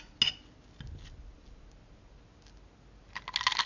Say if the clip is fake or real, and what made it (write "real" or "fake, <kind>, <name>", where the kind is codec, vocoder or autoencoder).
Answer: real